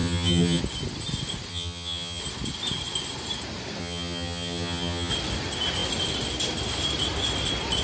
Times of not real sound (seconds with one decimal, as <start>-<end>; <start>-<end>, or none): 0.0-0.6; 1.5-2.2; 3.8-5.1